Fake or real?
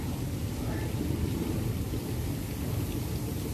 real